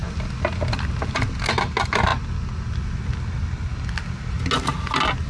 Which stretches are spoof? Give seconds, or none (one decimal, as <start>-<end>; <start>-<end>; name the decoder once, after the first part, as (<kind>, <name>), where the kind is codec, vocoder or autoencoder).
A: none